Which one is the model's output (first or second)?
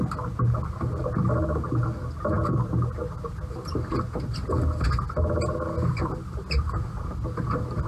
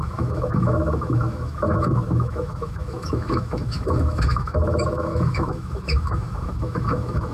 second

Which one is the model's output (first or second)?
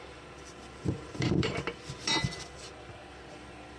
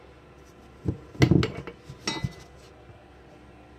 first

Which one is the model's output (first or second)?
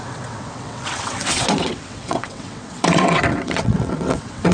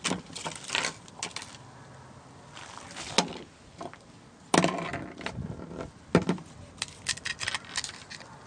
first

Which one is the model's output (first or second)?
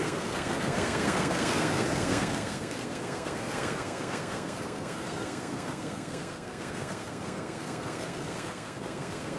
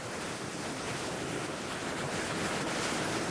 first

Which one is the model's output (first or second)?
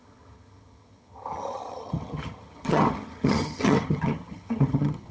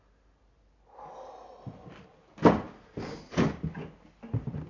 first